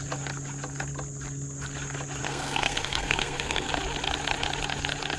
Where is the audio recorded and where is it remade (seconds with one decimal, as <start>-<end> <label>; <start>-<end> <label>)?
0.0-2.2 recorded; 2.2-3.7 remade; 3.7-5.2 recorded